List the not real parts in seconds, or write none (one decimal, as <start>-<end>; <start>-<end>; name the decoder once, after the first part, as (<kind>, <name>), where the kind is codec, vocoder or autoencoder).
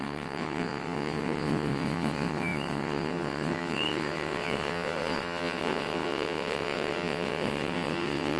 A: 0.0-8.4 (vocoder, WaveNeXt)